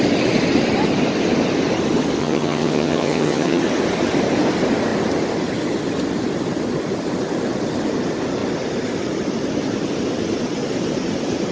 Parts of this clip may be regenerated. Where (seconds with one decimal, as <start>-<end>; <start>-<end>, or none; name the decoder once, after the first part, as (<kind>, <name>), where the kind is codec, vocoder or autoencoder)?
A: 2.2-3.6 (vocoder, HiFi-GAN)